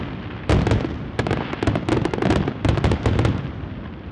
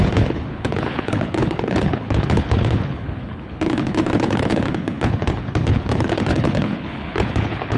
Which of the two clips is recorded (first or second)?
first